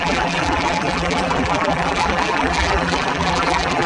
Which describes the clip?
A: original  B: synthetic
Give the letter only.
B